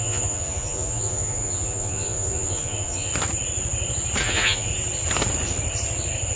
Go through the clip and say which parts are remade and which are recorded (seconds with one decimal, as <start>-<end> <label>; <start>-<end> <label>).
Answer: 0.0-3.1 remade; 3.1-4.2 recorded; 4.2-4.7 remade; 4.7-6.4 recorded